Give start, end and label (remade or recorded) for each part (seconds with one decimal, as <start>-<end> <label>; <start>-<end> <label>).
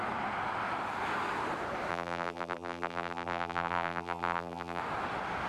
0.0-1.9 recorded; 1.9-4.8 remade; 4.8-5.5 recorded